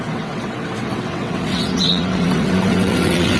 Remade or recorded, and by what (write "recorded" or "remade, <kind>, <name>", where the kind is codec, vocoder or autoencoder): remade, vocoder, WaveNeXt